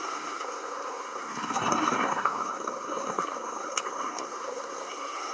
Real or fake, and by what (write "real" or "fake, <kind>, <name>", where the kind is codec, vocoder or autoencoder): fake, codec, SNAC